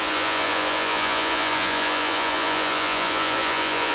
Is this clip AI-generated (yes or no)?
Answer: yes